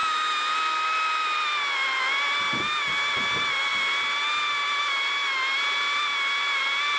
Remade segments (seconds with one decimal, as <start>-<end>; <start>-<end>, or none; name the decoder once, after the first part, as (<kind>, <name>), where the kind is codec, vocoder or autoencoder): none